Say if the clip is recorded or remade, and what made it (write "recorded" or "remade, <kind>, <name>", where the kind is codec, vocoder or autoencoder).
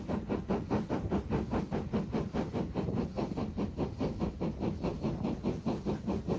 recorded